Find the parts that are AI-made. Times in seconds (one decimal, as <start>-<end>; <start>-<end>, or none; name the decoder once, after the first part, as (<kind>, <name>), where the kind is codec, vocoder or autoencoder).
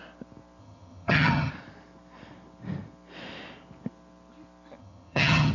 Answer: 0.6-1.5 (vocoder, HiFi-GAN); 4.8-5.5